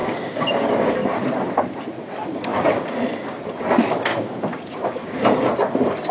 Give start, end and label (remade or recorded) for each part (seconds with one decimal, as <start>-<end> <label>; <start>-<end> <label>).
0.0-0.9 remade; 0.9-4.1 recorded; 4.1-5.2 remade; 5.2-6.1 recorded